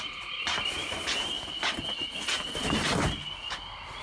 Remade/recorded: recorded